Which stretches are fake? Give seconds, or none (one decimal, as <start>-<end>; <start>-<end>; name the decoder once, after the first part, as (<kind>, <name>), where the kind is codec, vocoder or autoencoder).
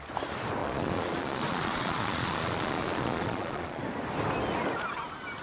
0.6-3.8 (vocoder, Vocos)